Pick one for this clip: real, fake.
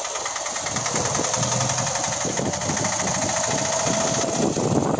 real